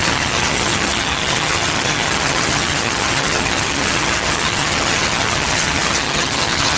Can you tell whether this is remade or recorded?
remade